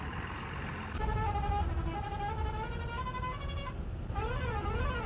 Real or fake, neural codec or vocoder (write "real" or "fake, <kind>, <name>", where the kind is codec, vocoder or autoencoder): real